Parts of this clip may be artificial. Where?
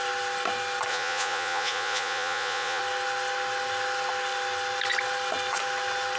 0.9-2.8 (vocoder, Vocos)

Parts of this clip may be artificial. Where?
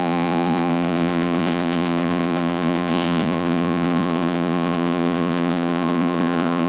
0.0-6.7 (vocoder, Vocos)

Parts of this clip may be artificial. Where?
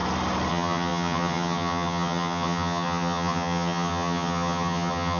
0.5-5.2 (vocoder, HiFi-GAN)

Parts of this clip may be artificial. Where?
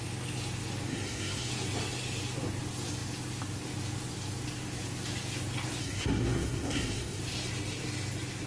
0.9-1.5 (codec, SNAC); 5.8-7.2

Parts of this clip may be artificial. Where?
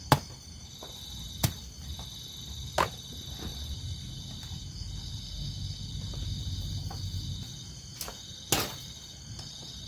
3.5-4.6 (vocoder, BigVGAN v2)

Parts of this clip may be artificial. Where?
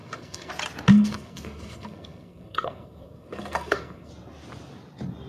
0.0-0.5 (codec, SNAC); 0.9-4.1